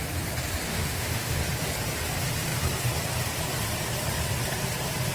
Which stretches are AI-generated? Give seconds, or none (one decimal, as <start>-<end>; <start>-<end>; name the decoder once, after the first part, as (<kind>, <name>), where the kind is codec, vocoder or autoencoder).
0.7-1.4 (autoencoder, DAC-VAE)